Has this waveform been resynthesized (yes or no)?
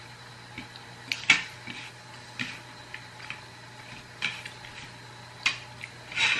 no